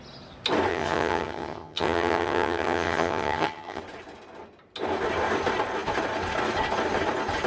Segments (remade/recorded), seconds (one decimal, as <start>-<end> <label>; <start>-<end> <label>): 0.0-0.7 recorded; 0.7-3.8 remade; 3.8-7.5 recorded